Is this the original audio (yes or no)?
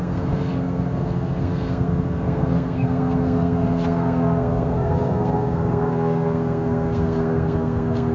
no